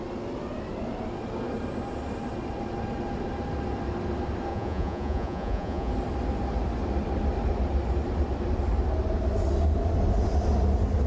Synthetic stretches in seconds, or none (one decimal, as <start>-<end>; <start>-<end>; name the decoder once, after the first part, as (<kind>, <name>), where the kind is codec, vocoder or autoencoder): 4.5-5.9 (vocoder, Vocos)